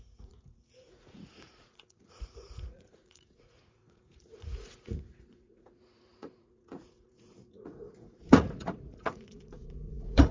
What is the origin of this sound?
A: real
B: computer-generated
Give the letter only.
B